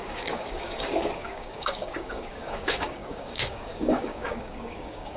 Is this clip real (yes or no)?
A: no